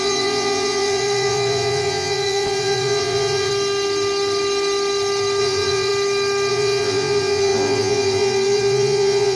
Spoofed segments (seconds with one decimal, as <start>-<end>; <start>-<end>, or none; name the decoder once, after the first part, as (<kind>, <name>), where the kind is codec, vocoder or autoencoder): 0.0-3.5 (vocoder, Vocos); 5.4-5.9; 6.5-9.4